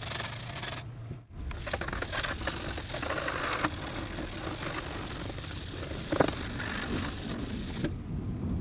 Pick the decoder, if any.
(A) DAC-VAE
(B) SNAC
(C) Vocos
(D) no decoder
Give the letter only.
D